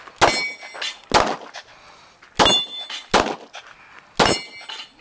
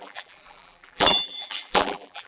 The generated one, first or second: second